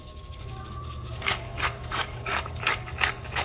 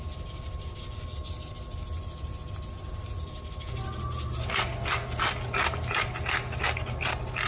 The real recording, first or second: second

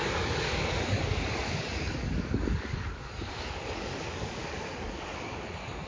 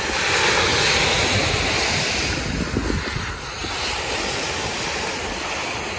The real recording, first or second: second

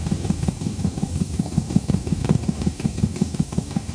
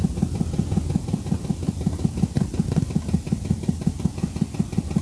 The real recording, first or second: second